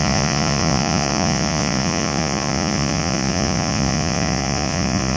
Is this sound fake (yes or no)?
yes